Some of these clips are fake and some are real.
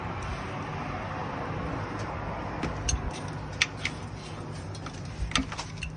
real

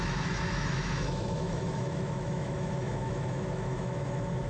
fake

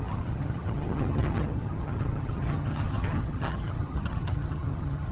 fake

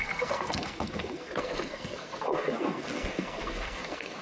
fake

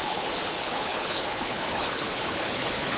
fake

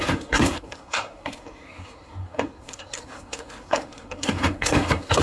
fake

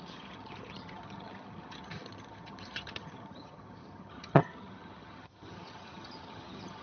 fake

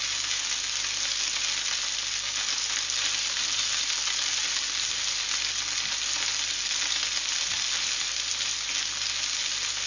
real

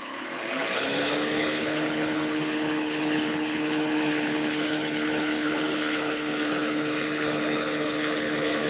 fake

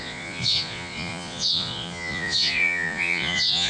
fake